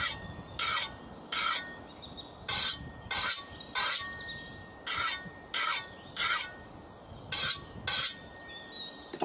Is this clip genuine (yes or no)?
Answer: yes